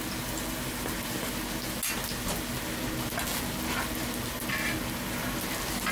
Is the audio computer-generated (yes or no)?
no